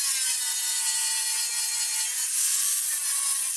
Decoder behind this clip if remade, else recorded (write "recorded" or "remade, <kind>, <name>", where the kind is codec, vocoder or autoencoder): recorded